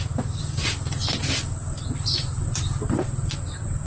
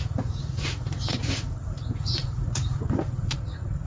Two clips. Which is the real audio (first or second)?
first